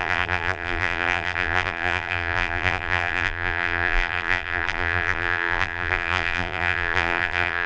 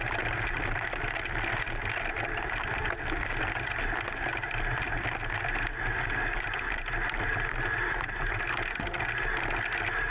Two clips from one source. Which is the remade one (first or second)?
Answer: first